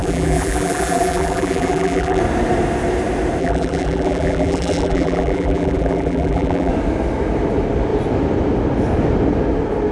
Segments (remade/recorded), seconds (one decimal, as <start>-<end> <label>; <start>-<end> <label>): 0.0-2.2 remade; 2.2-3.4 recorded; 3.4-6.7 remade; 6.7-9.9 recorded